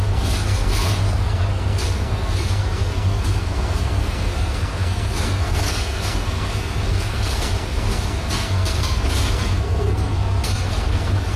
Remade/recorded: remade